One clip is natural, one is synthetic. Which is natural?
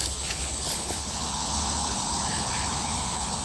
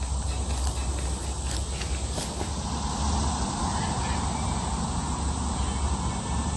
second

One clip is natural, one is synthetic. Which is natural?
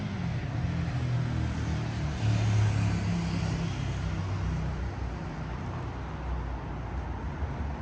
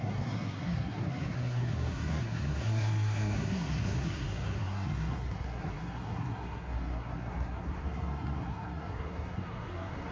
first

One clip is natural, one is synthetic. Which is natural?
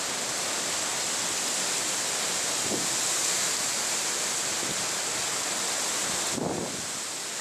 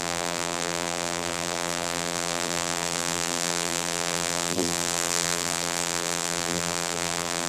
first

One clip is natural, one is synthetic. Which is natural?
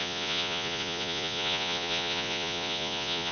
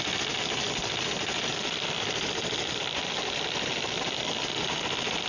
second